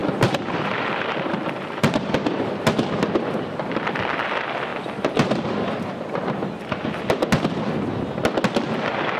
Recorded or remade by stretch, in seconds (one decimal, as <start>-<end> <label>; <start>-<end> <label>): 0.0-2.1 remade; 2.1-9.2 recorded